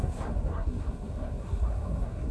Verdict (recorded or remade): remade